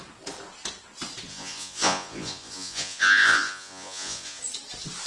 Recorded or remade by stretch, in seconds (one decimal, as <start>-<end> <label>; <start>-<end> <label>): 0.0-1.3 recorded; 1.3-4.4 remade; 4.4-5.1 recorded